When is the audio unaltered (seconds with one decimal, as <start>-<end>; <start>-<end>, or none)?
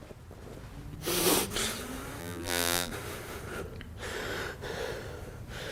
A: 0.0-2.2; 2.9-5.7